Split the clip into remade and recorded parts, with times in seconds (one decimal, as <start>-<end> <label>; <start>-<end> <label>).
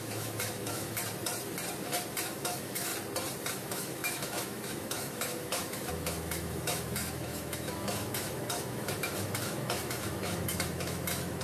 0.0-1.0 remade; 1.0-2.2 recorded; 2.2-2.9 remade; 2.9-3.5 recorded; 3.5-11.4 remade